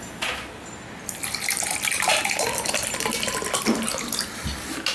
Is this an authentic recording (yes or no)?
yes